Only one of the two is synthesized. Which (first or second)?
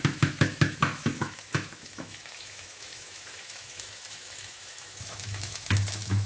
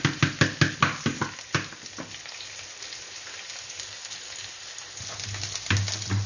first